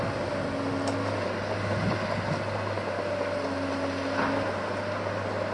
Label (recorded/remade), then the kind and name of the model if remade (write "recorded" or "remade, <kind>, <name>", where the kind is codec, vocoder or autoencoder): recorded